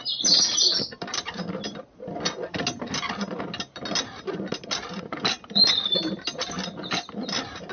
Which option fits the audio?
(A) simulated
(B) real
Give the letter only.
B